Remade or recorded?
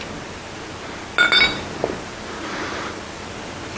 recorded